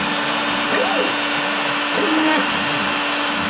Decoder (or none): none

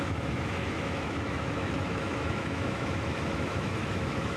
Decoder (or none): autoencoder, DAC-VAE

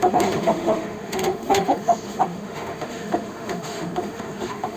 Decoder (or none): autoencoder, DAC-VAE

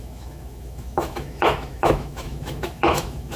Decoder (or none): autoencoder, DAC-VAE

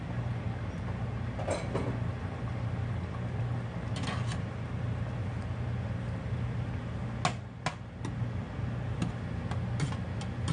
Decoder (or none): none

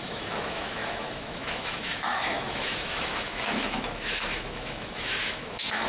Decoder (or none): autoencoder, DAC-VAE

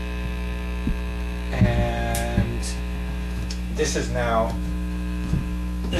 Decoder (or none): autoencoder, DAC-VAE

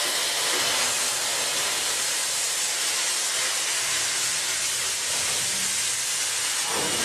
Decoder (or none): none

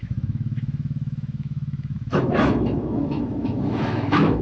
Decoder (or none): autoencoder, DAC-VAE